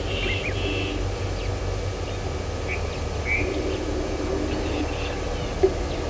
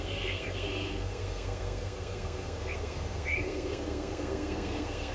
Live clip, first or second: first